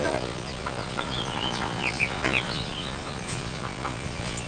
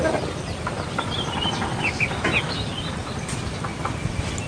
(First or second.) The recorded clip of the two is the second